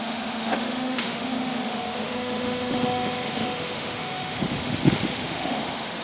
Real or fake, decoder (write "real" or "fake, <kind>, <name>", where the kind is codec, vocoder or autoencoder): fake, autoencoder, DAC-VAE